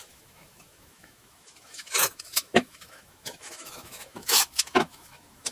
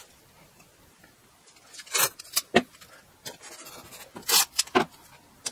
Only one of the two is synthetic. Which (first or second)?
first